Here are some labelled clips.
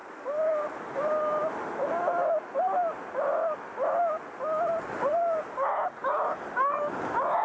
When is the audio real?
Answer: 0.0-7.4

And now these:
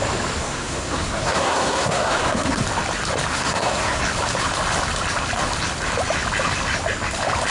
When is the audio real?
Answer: 0.0-0.4; 2.6-3.3; 4.0-7.5